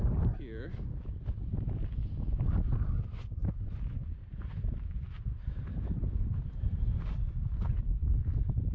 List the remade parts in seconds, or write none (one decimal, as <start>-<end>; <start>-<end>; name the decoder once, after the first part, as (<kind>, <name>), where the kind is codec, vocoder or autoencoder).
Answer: 4.2-7.0 (vocoder, BigVGAN v2)